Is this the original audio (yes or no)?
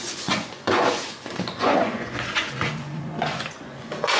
no